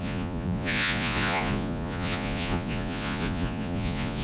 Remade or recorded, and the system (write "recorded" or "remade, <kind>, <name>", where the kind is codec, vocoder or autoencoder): remade, vocoder, Vocos